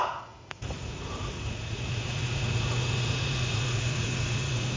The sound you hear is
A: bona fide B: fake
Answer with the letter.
B